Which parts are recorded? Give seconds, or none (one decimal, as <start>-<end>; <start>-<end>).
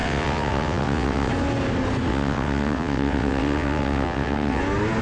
1.3-2.1; 4.6-5.0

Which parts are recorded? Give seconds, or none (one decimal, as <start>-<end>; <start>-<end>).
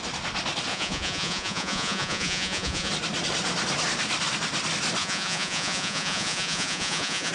0.0-0.7; 2.9-5.0